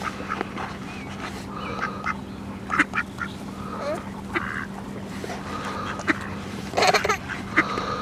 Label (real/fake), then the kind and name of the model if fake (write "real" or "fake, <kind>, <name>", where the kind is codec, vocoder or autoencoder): real